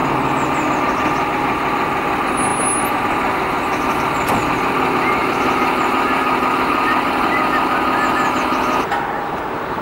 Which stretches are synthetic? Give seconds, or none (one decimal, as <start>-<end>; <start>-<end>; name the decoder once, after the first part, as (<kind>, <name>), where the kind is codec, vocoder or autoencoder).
5.2-7.3 (vocoder, BigVGAN v2)